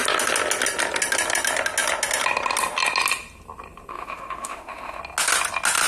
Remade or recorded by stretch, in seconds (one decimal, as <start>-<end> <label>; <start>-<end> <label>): 0.0-3.9 recorded; 3.9-5.0 remade; 5.0-5.9 recorded